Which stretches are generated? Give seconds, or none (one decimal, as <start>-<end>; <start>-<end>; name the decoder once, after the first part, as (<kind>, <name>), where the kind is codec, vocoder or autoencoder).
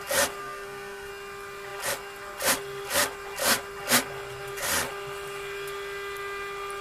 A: 0.4-1.1 (codec, SNAC)